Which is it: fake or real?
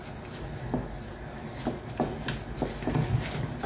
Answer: real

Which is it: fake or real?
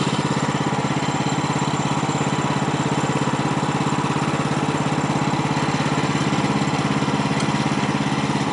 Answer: real